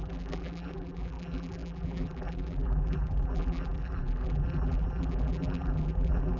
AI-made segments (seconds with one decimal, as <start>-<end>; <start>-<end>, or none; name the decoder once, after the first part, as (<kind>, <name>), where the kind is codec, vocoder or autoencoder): 0.0-6.4 (vocoder, BigVGAN v2)